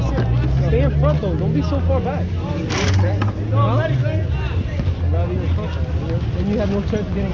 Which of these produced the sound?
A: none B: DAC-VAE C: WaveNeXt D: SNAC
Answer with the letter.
A